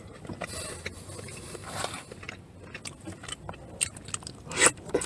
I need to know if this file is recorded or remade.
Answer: recorded